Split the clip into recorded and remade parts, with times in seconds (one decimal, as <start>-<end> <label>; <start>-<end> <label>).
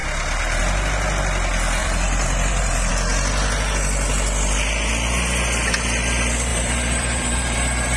0.0-1.8 recorded; 1.8-2.9 remade; 2.9-6.5 recorded; 6.5-8.0 remade